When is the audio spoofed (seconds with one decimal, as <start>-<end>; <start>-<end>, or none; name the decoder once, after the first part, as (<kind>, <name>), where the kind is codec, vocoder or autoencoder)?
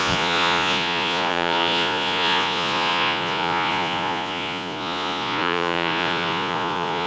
0.0-7.1 (vocoder, Vocos)